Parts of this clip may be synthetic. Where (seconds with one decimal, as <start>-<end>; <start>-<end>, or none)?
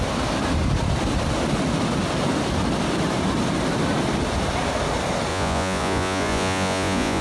5.3-7.2